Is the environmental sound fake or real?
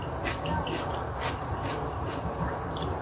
real